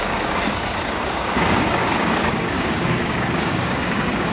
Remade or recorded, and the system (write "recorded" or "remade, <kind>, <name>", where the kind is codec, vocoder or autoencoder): remade, codec, DAC